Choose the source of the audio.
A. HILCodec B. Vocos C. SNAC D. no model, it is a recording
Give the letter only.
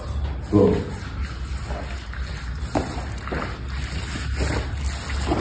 D